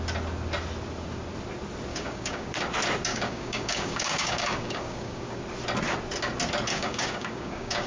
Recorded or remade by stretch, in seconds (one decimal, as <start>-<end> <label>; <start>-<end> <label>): 0.0-1.9 recorded; 1.9-2.5 remade; 2.5-3.1 recorded; 3.1-5.4 remade; 5.4-6.7 recorded; 6.7-7.9 remade